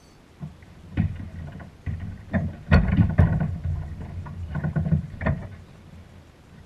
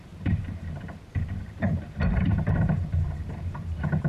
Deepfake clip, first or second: second